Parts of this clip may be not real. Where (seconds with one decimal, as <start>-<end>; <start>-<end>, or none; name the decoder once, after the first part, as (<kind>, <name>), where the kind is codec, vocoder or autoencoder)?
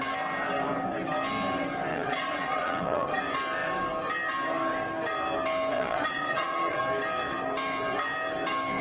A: 1.9-3.2 (vocoder, Vocos); 5.7-6.8